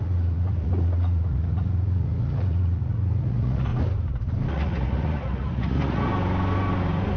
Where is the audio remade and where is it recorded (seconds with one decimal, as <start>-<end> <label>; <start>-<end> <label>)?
0.0-3.7 remade; 3.7-4.5 recorded; 4.5-6.1 remade; 6.1-7.2 recorded